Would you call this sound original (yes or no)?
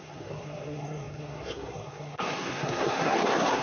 no